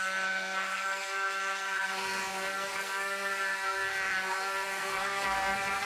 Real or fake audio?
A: fake